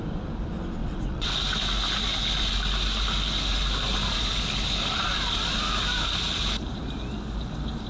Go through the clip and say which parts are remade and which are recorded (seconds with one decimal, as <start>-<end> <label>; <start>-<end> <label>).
0.0-0.8 recorded; 0.8-1.3 remade; 1.3-7.9 recorded

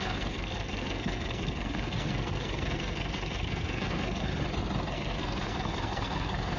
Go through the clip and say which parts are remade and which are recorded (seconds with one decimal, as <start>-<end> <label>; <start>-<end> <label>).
0.0-4.3 remade; 4.3-4.9 recorded; 4.9-6.6 remade

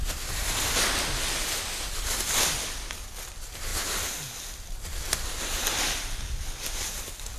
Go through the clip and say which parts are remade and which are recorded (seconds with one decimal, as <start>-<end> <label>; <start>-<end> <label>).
0.0-0.4 remade; 0.4-1.7 recorded; 1.7-3.7 remade; 3.7-5.8 recorded; 5.8-7.4 remade

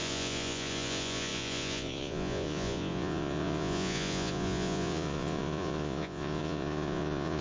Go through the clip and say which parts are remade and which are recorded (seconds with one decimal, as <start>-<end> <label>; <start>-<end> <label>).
0.0-7.4 remade

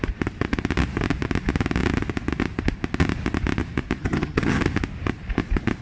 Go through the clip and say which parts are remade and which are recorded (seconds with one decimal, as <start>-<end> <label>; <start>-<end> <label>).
0.0-4.0 recorded; 4.0-4.6 remade; 4.6-5.8 recorded

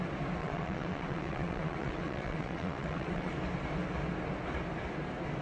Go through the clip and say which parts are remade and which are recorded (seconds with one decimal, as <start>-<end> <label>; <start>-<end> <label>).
0.0-0.4 recorded; 0.4-3.3 remade; 3.3-5.4 recorded

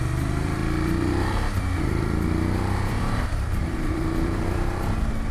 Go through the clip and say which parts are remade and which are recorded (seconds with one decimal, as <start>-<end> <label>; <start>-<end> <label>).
0.0-5.3 remade

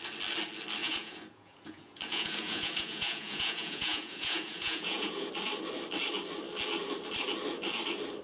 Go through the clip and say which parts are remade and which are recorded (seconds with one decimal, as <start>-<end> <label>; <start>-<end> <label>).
0.0-0.8 recorded; 0.8-5.3 remade; 5.3-8.2 recorded